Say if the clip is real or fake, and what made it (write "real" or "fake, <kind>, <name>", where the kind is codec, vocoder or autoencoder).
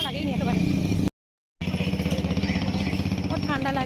real